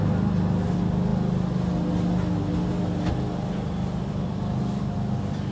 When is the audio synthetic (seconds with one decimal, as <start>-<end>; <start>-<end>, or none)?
none